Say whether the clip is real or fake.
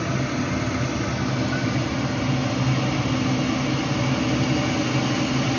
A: real